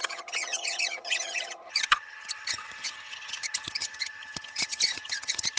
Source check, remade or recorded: remade